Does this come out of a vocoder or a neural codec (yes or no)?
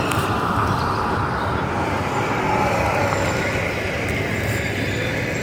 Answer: no